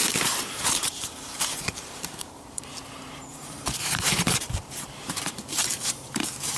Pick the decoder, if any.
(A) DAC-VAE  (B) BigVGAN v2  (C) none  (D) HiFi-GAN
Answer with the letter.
B